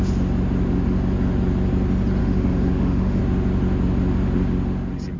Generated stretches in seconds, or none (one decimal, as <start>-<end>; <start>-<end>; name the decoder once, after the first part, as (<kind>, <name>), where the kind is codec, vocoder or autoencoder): 2.2-3.2 (autoencoder, DAC-VAE)